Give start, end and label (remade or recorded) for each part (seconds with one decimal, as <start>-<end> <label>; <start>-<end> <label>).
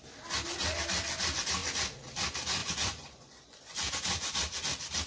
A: 0.0-2.6 recorded; 2.6-3.9 remade; 3.9-5.1 recorded